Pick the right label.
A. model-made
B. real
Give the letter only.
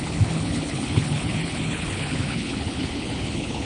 A